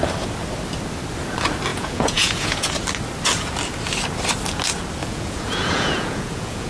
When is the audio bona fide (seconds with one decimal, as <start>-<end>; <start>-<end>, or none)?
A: 0.0-1.7; 2.7-5.0